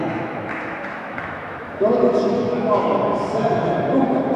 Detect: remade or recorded remade